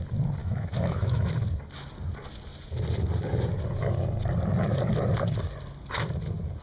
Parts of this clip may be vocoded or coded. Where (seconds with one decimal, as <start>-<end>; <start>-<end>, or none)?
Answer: 0.4-1.3